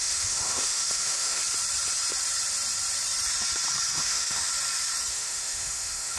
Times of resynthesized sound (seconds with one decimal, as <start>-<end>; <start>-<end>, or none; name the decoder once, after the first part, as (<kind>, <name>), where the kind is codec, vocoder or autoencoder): 0.0-1.4 (autoencoder, DAC-VAE); 4.0-4.5; 5.1-6.2